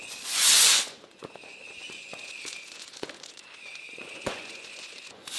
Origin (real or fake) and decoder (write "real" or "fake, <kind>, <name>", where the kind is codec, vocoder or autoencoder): fake, vocoder, Vocos